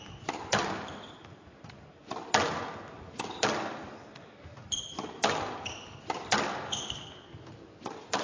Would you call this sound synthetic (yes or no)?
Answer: no